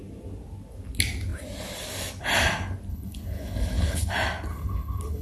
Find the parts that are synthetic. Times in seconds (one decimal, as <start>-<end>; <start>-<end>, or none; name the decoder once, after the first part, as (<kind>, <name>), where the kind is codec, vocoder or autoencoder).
2.9-4.1 (codec, HILCodec); 4.5-5.2